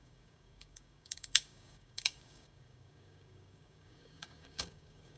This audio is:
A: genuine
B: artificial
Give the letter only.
B